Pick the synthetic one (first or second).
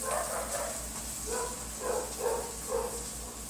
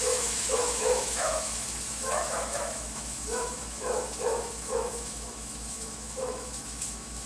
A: second